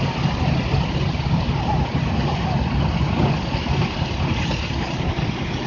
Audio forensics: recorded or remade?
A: remade